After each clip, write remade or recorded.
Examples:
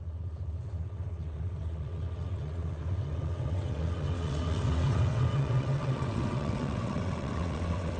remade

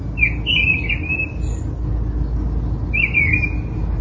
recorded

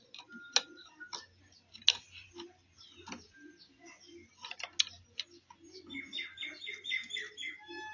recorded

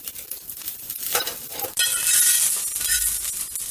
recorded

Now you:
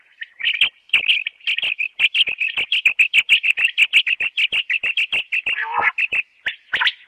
recorded